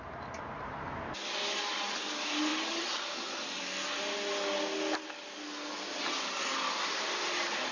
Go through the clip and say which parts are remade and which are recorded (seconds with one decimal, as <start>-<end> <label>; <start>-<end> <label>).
0.0-7.7 recorded